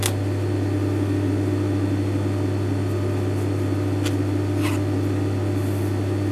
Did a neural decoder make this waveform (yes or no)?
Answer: no